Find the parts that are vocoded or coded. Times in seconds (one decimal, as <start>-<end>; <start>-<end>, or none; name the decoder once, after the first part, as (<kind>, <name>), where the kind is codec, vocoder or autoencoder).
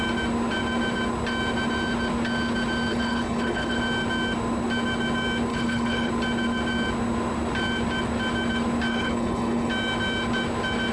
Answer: 2.9-3.8 (codec, HILCodec); 5.5-6.1; 8.9-9.7